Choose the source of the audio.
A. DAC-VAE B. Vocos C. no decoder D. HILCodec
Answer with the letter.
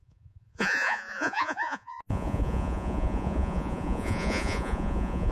B